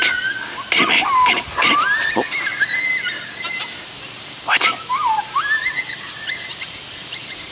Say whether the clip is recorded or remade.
recorded